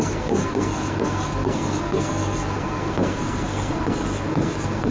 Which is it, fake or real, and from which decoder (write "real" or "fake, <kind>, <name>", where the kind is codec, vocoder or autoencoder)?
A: fake, codec, SNAC